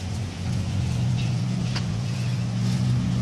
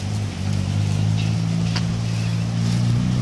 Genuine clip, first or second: second